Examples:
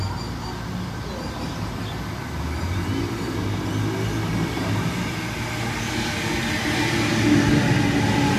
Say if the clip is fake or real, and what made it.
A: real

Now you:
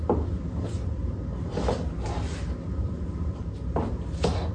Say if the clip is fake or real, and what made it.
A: real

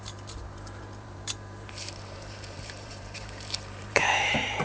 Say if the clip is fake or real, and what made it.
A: fake, vocoder, BigVGAN v2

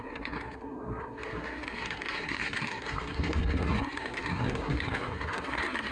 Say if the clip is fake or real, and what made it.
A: fake, codec, SNAC